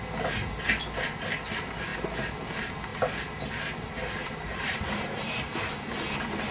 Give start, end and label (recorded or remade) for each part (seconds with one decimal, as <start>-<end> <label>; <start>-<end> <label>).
0.0-2.9 recorded; 2.9-3.4 remade; 3.4-4.2 recorded; 4.2-5.5 remade; 5.5-6.5 recorded